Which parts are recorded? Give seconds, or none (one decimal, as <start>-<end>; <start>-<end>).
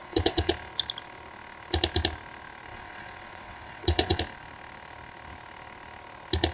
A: 0.5-2.7; 4.2-6.5